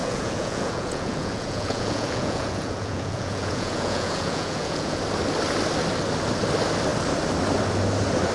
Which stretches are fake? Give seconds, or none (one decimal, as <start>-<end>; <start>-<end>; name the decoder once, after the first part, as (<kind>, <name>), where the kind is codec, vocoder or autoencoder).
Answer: 0.0-5.0 (vocoder, Vocos)